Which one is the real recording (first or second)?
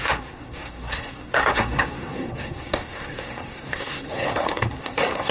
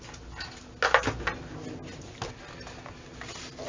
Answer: second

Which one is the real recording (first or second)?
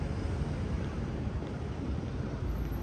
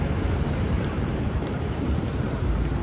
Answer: first